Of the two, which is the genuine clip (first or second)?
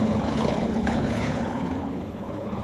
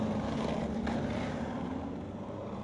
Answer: second